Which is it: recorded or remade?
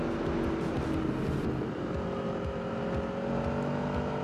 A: recorded